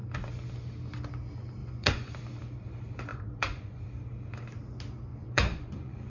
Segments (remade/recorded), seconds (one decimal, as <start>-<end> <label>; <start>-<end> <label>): 0.0-1.6 recorded; 1.6-2.1 remade; 2.1-3.1 recorded; 3.1-3.8 remade; 3.8-5.1 recorded; 5.1-6.1 remade